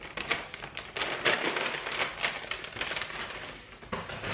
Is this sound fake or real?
real